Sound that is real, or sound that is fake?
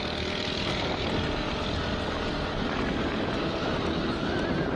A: real